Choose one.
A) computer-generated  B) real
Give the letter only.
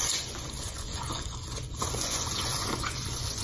A